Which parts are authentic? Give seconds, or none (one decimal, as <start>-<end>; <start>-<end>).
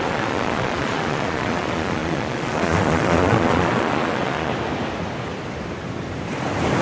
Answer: 4.5-6.8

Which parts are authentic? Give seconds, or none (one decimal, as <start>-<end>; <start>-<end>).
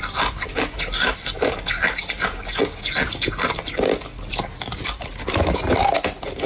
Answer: 0.0-6.5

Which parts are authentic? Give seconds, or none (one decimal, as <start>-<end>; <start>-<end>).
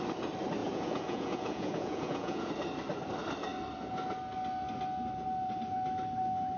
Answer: 0.0-0.6; 2.5-6.6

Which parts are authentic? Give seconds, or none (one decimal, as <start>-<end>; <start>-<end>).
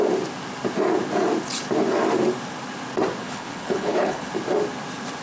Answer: 0.0-3.2; 4.3-5.2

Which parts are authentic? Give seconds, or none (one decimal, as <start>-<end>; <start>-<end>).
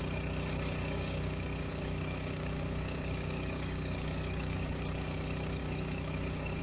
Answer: 0.0-0.8; 4.8-5.6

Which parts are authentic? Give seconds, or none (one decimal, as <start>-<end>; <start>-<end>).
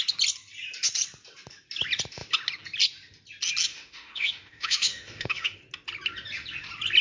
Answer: 0.0-3.7; 5.6-7.0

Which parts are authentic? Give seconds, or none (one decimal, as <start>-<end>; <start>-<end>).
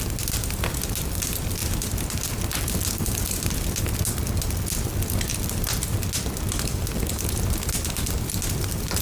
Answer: 0.0-9.0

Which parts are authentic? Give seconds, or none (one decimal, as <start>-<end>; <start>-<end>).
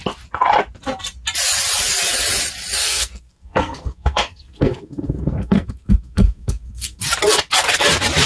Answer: 0.0-2.8; 7.0-8.3